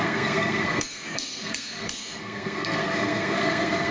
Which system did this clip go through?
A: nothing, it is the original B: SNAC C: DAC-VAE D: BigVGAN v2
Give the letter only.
B